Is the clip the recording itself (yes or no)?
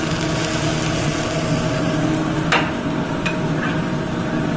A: yes